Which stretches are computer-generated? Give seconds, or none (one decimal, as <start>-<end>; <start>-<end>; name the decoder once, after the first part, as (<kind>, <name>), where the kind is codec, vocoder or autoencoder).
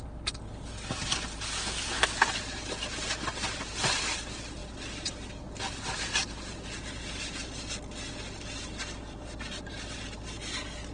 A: none